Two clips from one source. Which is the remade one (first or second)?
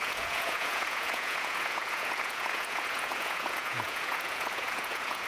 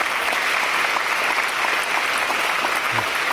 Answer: first